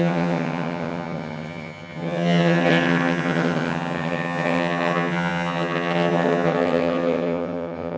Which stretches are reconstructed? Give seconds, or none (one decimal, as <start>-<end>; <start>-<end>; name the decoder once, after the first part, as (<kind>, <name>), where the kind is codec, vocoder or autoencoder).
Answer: 0.0-8.0 (vocoder, HiFi-GAN)